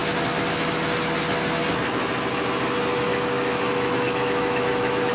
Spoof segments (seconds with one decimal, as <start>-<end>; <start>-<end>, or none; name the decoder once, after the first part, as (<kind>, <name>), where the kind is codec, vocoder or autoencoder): 3.1-5.1 (autoencoder, DAC-VAE)